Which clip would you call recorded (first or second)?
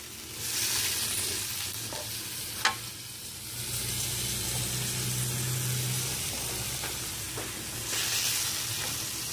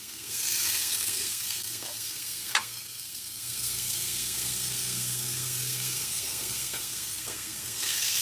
first